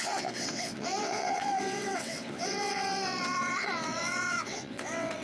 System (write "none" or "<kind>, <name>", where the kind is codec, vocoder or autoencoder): vocoder, WaveNeXt